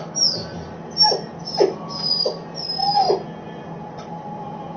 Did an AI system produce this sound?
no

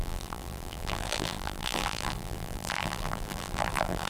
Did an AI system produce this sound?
yes